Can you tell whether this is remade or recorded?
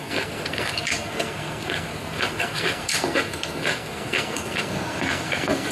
remade